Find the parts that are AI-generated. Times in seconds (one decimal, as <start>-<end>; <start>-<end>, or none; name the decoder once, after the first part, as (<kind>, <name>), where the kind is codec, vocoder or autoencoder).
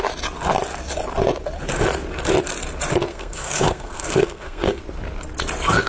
3.1-4.8 (codec, SNAC)